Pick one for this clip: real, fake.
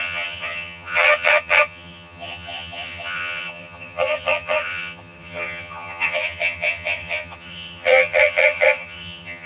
fake